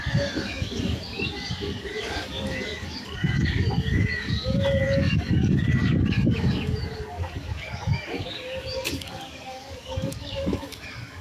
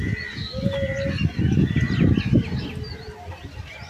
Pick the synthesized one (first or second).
first